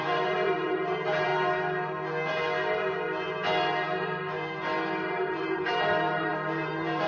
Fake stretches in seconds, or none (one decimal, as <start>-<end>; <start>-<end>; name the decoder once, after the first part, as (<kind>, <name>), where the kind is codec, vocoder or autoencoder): 0.0-1.3 (vocoder, BigVGAN v2); 5.1-7.1

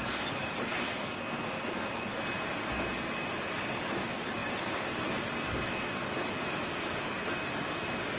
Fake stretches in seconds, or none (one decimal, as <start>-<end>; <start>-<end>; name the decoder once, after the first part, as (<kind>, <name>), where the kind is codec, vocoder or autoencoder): 0.4-1.1 (vocoder, BigVGAN v2); 4.4-5.3

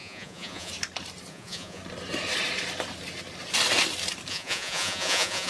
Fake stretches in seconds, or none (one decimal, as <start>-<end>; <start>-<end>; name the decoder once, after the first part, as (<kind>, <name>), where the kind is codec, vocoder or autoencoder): 0.0-0.7 (vocoder, Vocos); 1.3-1.8; 4.3-5.5